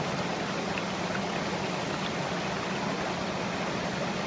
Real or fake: real